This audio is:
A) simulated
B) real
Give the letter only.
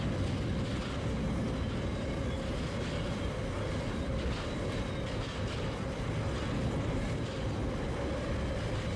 B